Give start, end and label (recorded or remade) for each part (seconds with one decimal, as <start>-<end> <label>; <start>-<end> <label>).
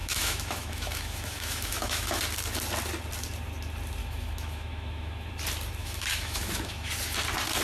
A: 0.0-2.2 remade; 2.2-4.0 recorded; 4.0-5.3 remade; 5.3-5.8 recorded; 5.8-6.9 remade; 6.9-7.6 recorded